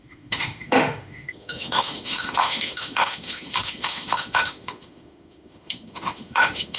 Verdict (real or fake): fake